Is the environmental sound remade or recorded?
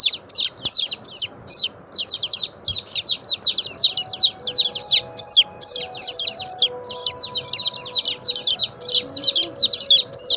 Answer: recorded